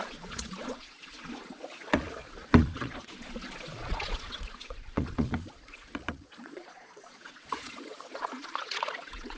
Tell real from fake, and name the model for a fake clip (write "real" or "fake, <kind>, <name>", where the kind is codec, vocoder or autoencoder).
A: fake, vocoder, Vocos